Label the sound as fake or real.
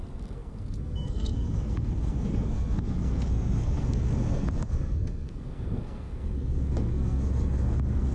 fake